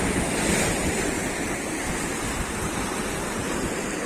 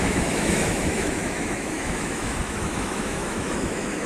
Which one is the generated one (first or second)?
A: second